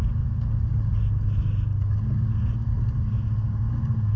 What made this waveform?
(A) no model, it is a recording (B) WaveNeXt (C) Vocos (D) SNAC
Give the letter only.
A